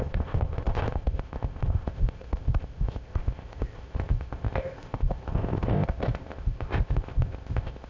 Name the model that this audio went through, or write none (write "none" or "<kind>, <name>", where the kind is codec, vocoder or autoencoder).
codec, ZipCodec